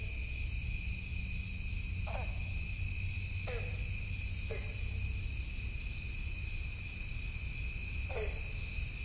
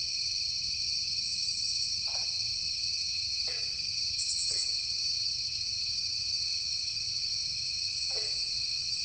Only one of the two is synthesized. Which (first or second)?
second